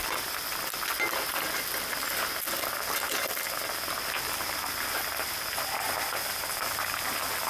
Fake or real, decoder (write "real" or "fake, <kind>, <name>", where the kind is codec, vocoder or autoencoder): real